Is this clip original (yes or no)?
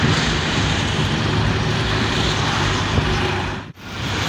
no